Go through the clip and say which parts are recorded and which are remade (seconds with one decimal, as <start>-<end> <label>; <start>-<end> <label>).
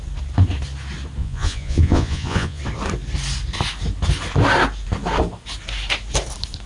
0.0-1.2 recorded; 1.2-2.6 remade; 2.6-6.7 recorded